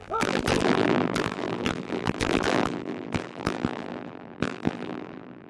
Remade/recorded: remade